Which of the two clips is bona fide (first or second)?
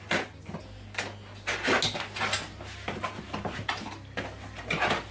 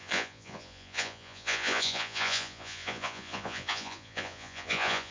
first